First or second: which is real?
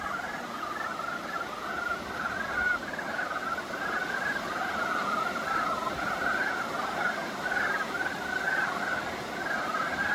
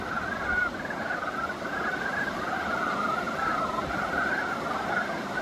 first